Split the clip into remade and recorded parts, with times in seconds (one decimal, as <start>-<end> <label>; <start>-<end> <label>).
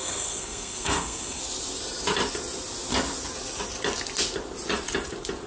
0.0-1.4 remade; 1.4-5.5 recorded